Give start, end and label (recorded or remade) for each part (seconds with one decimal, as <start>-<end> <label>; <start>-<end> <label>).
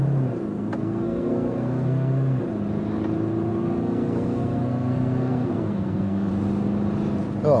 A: 0.0-0.5 recorded; 0.5-2.4 remade; 2.4-3.5 recorded; 3.5-6.3 remade; 6.3-7.6 recorded